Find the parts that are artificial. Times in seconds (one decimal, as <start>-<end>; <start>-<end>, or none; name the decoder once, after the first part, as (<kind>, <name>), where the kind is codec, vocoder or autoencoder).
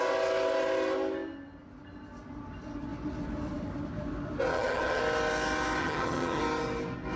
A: 4.5-5.0 (vocoder, HiFi-GAN); 5.8-6.4